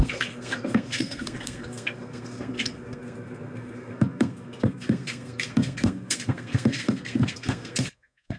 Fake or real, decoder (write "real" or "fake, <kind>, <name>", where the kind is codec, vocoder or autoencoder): fake, codec, SNAC